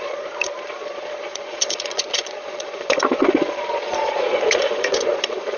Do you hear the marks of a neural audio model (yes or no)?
yes